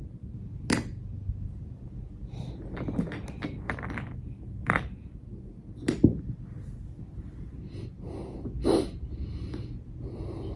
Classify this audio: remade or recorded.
recorded